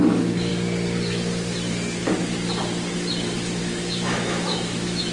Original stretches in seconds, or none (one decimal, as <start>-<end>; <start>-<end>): 0.5-3.6